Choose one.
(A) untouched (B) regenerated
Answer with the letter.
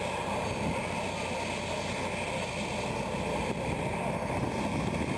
A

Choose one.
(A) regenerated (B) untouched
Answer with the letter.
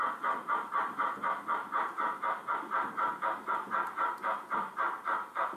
A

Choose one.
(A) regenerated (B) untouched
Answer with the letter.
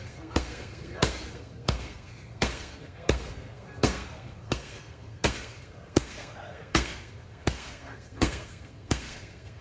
A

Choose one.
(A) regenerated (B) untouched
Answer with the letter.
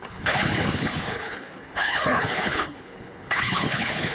A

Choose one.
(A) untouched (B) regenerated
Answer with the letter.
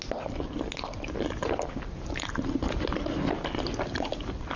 A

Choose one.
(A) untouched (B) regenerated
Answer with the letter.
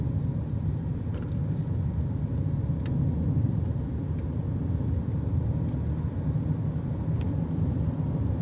A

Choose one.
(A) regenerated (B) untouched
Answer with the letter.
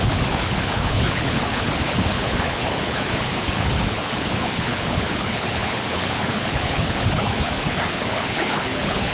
A